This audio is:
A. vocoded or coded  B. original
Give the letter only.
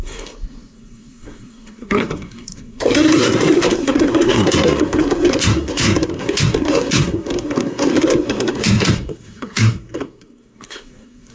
A